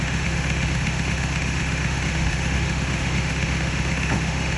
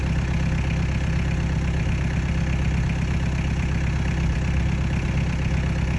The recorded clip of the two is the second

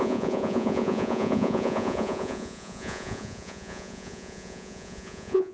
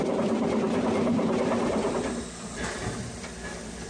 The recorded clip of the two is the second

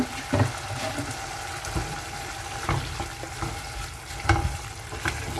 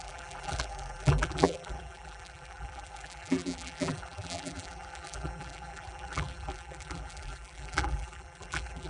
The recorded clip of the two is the first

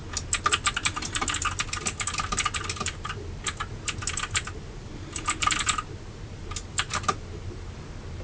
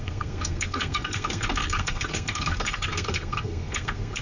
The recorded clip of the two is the first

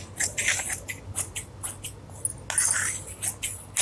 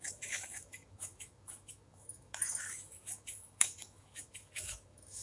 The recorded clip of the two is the first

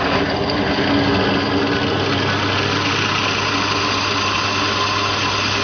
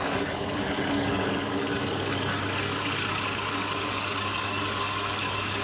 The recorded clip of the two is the first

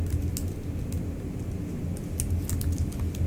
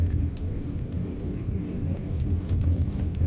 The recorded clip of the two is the first